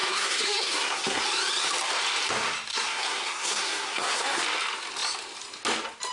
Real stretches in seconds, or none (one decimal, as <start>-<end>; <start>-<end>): 1.2-2.7; 4.4-6.1